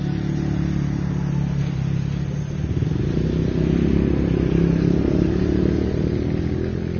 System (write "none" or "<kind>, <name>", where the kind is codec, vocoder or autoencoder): none